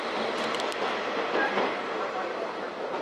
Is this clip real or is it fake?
real